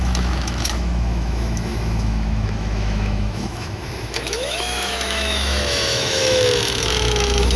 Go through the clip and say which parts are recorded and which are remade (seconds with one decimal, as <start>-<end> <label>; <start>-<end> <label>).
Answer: 0.0-7.6 remade